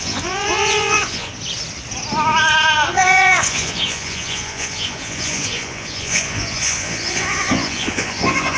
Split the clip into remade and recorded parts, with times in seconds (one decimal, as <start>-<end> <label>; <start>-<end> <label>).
0.0-1.3 remade; 1.3-2.9 recorded; 2.9-8.6 remade